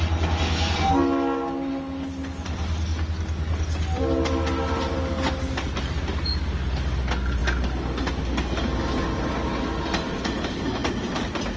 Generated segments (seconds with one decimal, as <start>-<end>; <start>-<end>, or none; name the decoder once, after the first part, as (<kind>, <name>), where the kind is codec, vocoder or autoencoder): none